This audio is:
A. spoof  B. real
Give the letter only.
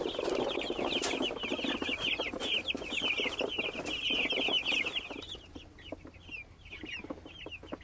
B